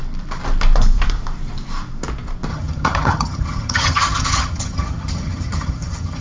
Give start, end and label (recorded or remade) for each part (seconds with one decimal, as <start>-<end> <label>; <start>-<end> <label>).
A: 0.0-2.5 recorded; 2.5-6.2 remade